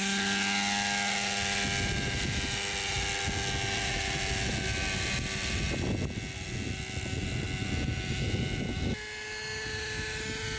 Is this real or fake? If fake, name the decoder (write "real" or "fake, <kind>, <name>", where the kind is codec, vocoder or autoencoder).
real